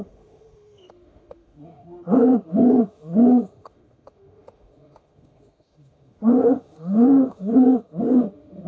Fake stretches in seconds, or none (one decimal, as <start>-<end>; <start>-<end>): 0.0-8.7